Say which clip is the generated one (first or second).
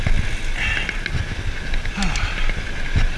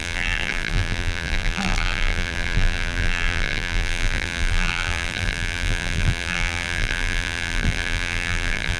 second